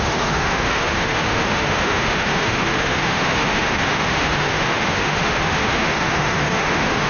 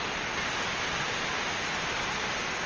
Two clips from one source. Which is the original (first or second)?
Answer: second